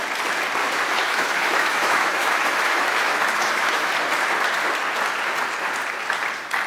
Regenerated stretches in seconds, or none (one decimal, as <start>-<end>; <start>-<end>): 0.6-3.9